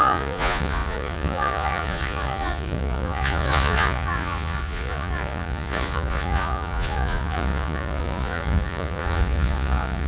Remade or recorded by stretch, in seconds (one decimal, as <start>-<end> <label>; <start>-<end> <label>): 0.0-10.1 remade